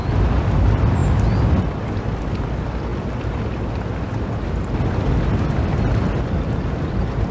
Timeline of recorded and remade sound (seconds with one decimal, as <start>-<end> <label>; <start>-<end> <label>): 0.0-7.3 recorded